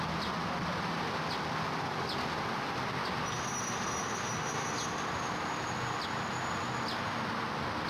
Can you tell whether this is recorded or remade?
recorded